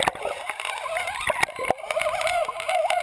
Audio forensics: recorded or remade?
recorded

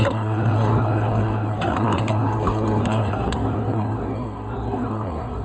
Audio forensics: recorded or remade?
remade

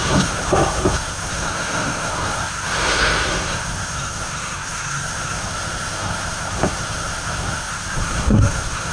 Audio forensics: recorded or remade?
remade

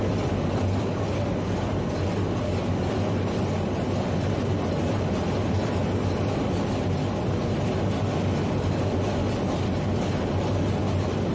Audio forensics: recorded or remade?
recorded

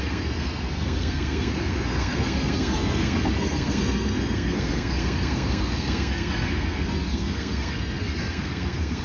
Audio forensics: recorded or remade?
remade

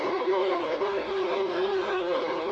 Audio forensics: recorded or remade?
remade